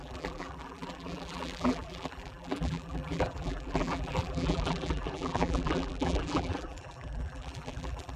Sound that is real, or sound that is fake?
fake